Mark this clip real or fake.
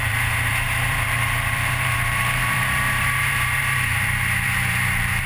fake